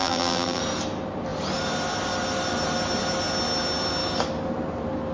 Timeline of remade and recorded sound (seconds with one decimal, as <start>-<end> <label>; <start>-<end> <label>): 0.0-0.6 remade; 0.6-5.1 recorded